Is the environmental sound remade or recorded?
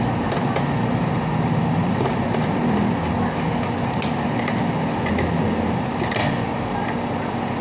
recorded